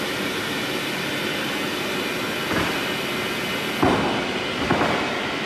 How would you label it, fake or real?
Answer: real